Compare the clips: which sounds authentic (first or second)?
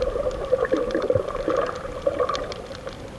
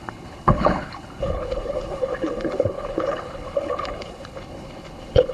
first